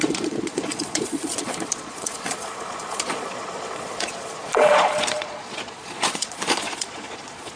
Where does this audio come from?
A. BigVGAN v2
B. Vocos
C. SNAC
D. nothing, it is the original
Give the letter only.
B